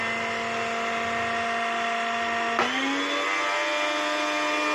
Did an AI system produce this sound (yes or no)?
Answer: no